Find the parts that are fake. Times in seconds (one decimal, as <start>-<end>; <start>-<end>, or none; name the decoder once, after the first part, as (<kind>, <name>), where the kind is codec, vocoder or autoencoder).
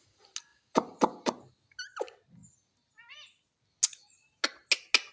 none